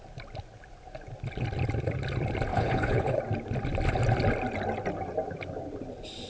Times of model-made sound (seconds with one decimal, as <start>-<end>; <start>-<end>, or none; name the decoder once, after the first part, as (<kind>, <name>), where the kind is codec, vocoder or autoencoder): 2.5-3.2 (codec, HILCodec)